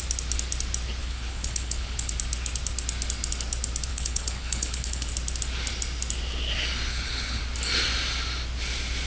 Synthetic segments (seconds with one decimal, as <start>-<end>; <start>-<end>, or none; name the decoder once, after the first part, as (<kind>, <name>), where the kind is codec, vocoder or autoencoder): 1.0-2.1 (codec, HILCodec); 3.9-5.1; 6.9-7.4